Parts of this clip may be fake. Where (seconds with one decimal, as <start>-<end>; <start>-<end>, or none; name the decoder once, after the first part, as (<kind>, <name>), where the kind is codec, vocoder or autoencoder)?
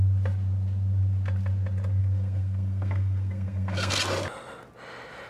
2.0-4.0 (codec, SNAC)